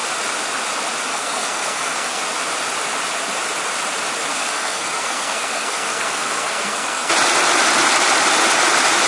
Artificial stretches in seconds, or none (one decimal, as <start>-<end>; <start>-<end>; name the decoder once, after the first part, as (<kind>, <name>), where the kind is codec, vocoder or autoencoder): 1.1-2.2 (codec, SNAC); 4.3-7.1